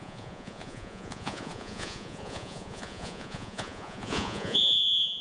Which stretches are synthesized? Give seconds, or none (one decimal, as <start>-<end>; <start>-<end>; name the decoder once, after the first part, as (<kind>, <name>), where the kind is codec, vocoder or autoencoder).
0.0-5.2 (vocoder, Vocos)